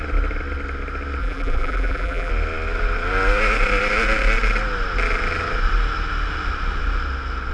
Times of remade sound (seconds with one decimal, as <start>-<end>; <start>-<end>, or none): 1.2-2.3